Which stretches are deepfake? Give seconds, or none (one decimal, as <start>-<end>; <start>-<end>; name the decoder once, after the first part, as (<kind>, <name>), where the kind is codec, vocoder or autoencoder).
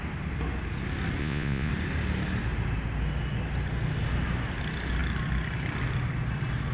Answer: 1.2-1.7 (vocoder, Vocos)